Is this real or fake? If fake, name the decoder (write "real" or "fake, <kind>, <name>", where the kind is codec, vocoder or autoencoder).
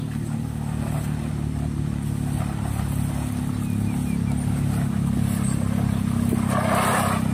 real